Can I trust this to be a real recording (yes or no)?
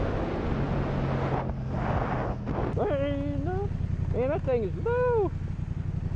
yes